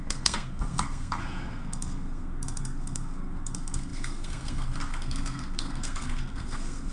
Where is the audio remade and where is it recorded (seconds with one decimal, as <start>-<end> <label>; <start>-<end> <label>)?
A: 0.0-6.9 remade